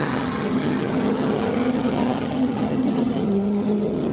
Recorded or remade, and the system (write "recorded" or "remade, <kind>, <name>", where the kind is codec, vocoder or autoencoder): remade, vocoder, HiFi-GAN